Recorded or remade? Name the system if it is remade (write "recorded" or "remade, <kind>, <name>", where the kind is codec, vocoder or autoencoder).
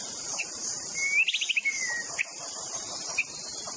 recorded